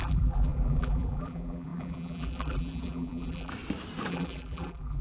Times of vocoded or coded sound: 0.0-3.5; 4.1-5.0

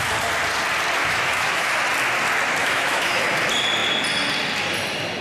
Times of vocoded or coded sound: 1.0-1.7; 2.6-3.2

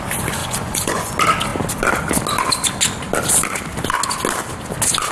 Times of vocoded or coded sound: 0.4-1.1

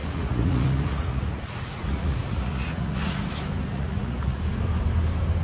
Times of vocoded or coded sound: 0.0-3.2; 3.7-4.4

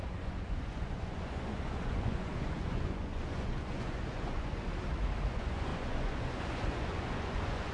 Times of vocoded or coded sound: 0.0-4.7; 5.3-7.7

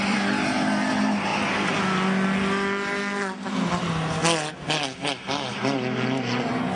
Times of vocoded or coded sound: none

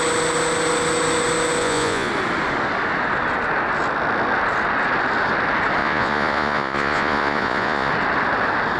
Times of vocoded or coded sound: 1.6-2.1; 5.8-7.9

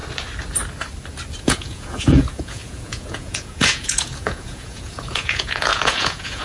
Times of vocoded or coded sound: 1.4-6.4